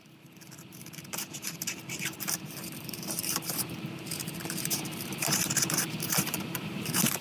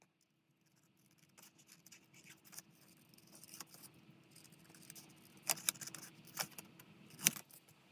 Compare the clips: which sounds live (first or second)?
second